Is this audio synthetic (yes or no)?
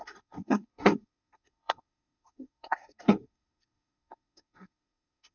yes